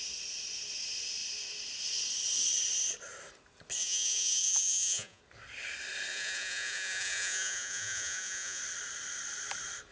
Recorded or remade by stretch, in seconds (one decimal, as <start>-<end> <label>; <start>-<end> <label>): 0.0-3.8 recorded; 3.8-5.2 remade; 5.2-6.1 recorded; 6.1-8.6 remade; 8.6-9.9 recorded